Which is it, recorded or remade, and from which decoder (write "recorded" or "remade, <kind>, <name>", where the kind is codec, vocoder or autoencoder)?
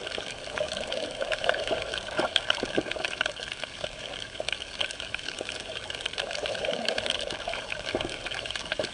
remade, codec, DAC